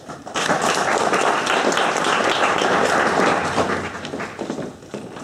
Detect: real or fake real